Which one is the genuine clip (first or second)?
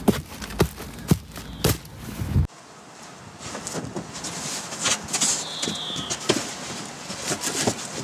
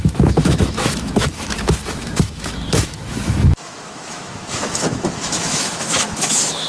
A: first